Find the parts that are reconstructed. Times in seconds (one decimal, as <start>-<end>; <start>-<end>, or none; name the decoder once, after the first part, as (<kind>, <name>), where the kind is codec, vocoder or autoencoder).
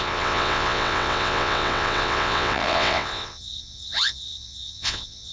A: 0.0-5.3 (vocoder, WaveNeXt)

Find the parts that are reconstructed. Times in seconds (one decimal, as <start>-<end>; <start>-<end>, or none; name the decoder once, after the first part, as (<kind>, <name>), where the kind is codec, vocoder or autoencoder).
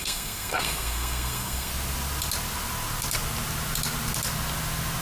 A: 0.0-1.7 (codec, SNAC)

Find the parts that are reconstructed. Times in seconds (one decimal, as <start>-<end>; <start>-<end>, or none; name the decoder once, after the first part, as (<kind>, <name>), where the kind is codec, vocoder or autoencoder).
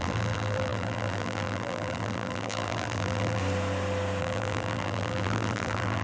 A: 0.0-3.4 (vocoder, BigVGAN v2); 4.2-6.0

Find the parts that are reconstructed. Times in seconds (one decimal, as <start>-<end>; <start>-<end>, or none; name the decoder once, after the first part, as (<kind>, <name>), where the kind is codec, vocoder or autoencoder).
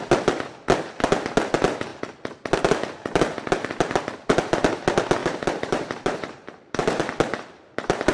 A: 5.2-7.1 (vocoder, BigVGAN v2)